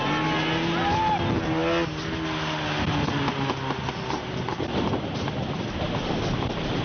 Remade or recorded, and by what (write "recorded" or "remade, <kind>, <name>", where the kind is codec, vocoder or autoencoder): recorded